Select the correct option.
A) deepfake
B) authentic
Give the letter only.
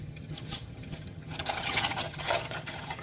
A